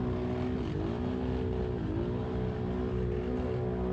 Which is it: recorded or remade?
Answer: recorded